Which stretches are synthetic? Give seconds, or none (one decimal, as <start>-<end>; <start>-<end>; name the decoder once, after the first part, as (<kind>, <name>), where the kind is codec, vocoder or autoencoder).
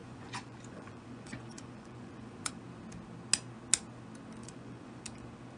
0.0-2.5 (vocoder, Vocos); 4.4-5.0